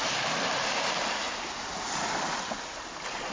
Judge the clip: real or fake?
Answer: real